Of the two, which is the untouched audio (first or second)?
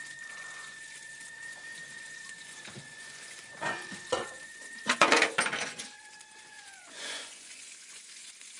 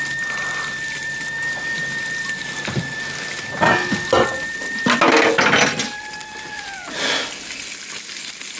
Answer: second